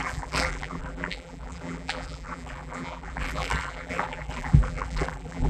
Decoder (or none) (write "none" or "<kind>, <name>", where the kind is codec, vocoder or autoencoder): vocoder, BigVGAN v2